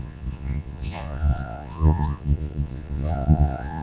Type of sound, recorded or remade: remade